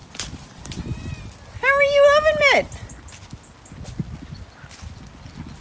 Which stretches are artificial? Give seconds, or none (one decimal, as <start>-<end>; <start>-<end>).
0.0-0.8